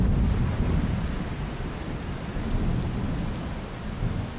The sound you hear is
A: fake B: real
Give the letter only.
B